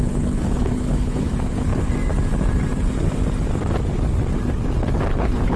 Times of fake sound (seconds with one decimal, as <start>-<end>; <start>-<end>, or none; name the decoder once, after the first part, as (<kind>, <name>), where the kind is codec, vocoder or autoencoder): 0.0-1.7 (codec, HILCodec); 5.1-5.6